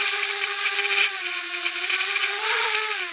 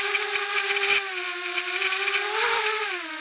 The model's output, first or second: first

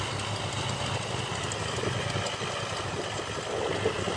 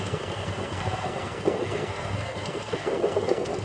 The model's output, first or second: second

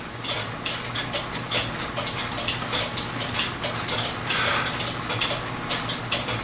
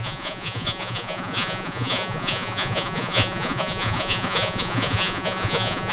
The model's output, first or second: second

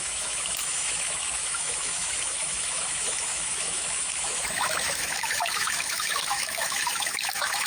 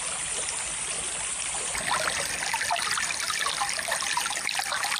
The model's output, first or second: first